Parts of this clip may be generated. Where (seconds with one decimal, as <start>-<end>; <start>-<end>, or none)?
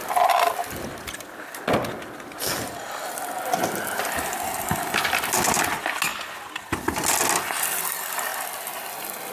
none